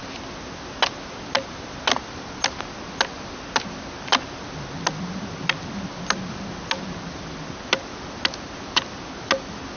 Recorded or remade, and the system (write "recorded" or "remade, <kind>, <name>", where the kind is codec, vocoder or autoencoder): recorded